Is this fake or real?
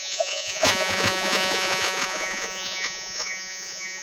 fake